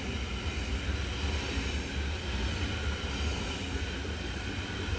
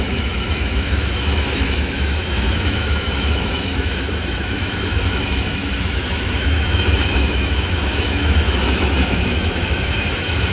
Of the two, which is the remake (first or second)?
second